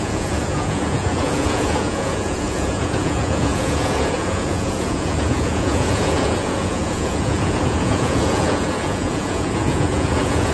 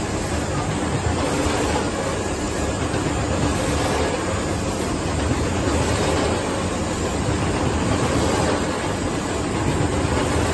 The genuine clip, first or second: second